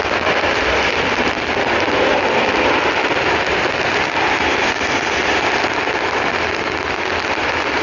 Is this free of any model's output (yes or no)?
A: yes